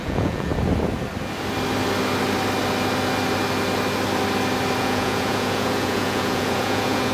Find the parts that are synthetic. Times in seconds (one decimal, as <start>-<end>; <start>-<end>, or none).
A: 0.0-0.5; 4.8-7.1